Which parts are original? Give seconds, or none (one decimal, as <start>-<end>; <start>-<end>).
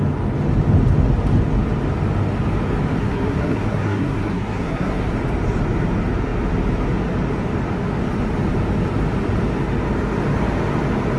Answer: 0.0-3.0; 5.1-11.2